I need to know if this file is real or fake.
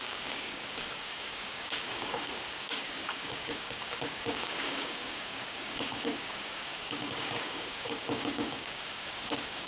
fake